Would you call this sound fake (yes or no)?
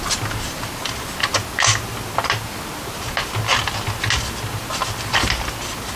no